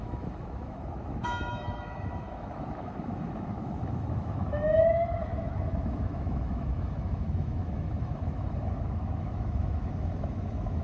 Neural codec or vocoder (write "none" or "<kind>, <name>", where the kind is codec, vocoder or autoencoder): autoencoder, DAC-VAE